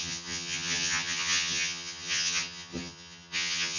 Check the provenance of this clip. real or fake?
fake